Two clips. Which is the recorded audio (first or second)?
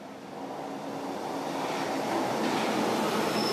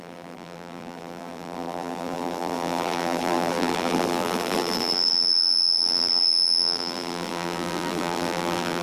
first